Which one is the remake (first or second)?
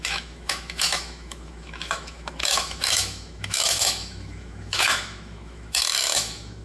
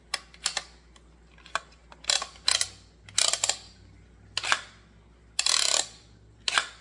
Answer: first